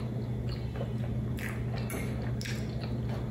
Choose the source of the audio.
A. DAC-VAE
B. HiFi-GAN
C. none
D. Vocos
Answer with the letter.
C